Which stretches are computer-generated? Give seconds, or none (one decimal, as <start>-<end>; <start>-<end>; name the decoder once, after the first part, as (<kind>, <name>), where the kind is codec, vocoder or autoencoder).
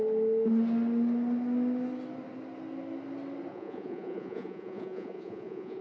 3.5-5.8 (vocoder, Vocos)